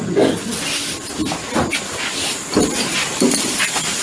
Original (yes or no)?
yes